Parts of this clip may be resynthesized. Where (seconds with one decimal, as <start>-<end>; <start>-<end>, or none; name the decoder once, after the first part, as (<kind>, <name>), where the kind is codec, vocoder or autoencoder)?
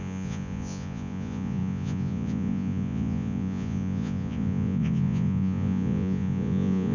0.0-6.9 (vocoder, Vocos)